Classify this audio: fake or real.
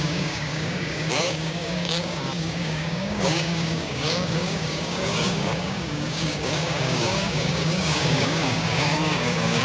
fake